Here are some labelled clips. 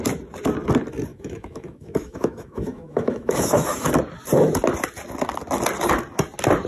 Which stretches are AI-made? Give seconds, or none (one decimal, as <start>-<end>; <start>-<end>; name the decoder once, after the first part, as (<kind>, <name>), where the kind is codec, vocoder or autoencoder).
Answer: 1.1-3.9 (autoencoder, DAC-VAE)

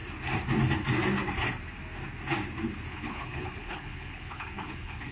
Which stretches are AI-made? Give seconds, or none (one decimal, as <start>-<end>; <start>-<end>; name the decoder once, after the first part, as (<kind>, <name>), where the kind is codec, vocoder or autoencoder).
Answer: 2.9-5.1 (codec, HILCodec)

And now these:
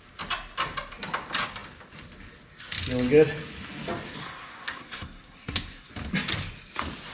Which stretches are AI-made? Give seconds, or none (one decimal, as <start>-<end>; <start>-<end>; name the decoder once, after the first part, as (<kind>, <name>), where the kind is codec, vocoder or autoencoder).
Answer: 4.2-5.9 (codec, SNAC)

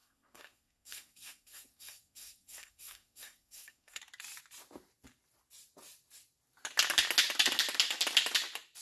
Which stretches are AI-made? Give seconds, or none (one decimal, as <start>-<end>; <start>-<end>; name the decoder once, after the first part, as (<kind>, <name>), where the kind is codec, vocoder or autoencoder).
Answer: 0.0-4.0 (codec, SNAC)